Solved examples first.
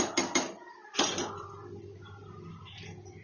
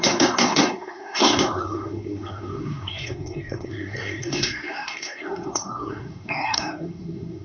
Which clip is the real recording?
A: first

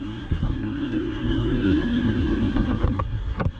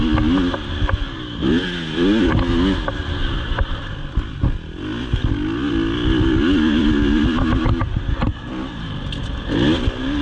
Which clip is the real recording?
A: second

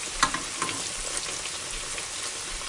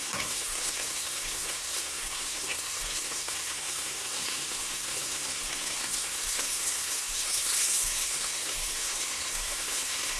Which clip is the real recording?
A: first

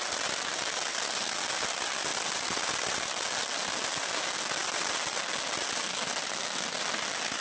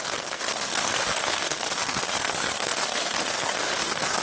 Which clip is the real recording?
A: first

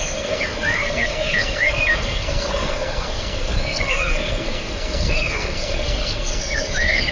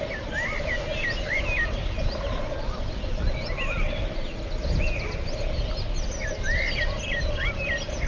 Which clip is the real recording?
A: second